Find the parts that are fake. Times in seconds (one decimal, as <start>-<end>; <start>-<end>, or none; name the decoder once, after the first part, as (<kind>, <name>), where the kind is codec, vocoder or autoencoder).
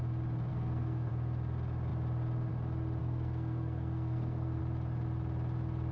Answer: 0.5-1.1 (codec, SNAC); 3.0-4.6